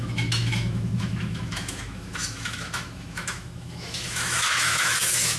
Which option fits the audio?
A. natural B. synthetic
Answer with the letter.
B